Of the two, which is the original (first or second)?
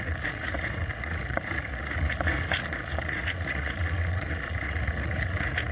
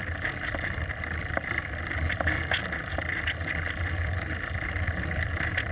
second